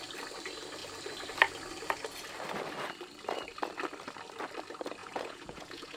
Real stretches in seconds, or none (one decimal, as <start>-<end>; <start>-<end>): 0.0-5.0